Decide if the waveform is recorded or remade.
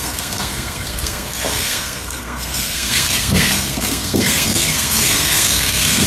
remade